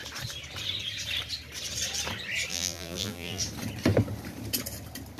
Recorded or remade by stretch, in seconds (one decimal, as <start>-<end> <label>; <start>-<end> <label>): 0.0-2.5 recorded; 2.5-3.4 remade; 3.4-5.2 recorded